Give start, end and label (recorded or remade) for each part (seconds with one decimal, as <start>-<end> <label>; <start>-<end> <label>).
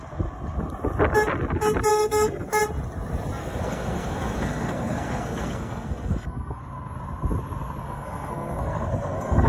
0.0-1.9 recorded; 1.9-2.6 remade; 2.6-3.4 recorded; 3.4-6.6 remade; 6.6-7.8 recorded; 7.8-9.5 remade